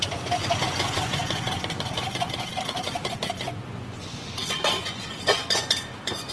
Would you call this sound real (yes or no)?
no